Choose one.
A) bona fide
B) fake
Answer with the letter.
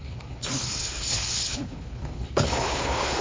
B